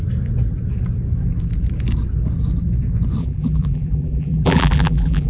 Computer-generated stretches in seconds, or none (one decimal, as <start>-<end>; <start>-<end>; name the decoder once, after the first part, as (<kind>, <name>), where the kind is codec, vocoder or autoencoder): 3.2-5.3 (vocoder, BigVGAN v2)